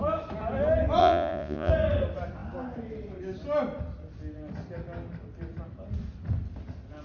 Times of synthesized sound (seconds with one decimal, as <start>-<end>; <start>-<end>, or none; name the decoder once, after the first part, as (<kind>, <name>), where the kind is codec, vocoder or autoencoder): 1.0-1.7 (vocoder, Vocos)